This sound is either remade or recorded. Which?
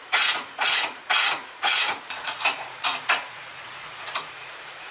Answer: remade